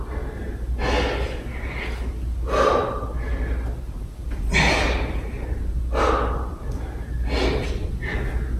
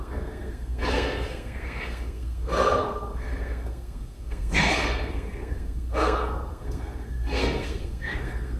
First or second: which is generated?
second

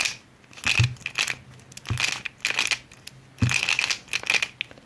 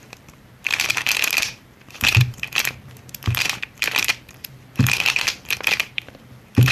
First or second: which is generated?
second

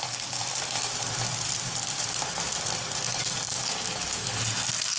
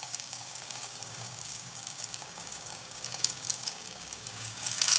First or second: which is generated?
second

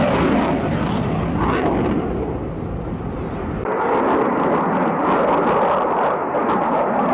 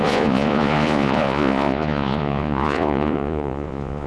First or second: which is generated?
second